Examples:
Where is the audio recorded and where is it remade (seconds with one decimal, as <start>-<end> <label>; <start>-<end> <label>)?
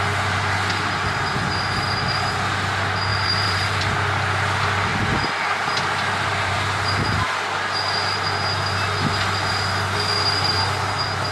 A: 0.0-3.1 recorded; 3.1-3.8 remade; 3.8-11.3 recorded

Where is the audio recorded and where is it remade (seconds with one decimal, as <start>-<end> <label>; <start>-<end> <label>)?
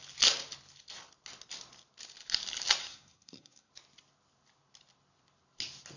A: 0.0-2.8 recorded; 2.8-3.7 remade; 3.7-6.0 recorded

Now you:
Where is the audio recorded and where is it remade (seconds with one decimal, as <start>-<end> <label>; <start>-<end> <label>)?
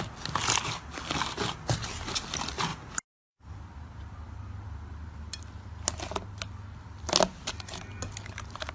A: 0.0-8.7 recorded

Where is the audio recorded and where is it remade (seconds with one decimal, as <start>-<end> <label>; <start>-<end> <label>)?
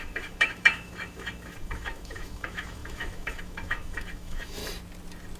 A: 0.0-4.6 remade; 4.6-5.4 recorded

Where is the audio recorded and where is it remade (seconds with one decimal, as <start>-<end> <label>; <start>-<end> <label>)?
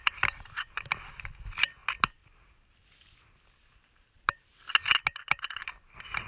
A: 0.0-6.3 recorded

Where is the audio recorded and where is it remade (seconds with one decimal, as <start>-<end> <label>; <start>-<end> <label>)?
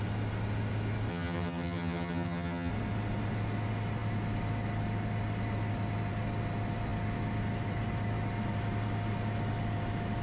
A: 0.0-1.1 recorded; 1.1-2.7 remade; 2.7-10.2 recorded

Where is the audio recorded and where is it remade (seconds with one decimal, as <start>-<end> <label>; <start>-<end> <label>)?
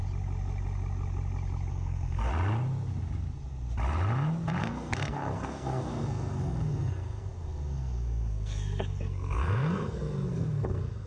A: 0.0-1.7 recorded; 1.7-2.3 remade; 2.3-4.6 recorded; 4.6-11.1 remade